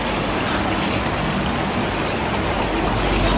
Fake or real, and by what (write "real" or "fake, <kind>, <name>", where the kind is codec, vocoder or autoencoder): real